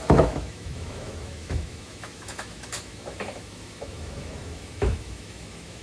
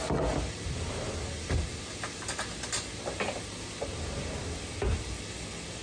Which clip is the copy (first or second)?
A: first